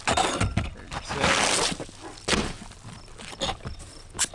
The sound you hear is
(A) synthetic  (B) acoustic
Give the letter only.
B